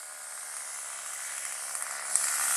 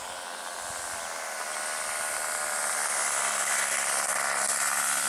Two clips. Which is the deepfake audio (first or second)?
second